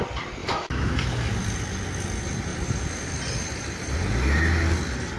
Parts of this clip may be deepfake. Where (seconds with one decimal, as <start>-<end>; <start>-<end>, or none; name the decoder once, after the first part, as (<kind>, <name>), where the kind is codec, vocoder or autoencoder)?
0.4-1.3 (autoencoder, DAC-VAE)